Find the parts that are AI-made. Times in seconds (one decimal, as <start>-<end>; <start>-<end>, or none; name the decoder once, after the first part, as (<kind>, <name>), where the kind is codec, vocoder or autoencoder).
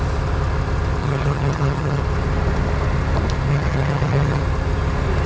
1.0-2.0 (vocoder, HiFi-GAN); 3.5-4.4